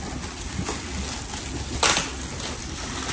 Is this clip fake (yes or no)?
no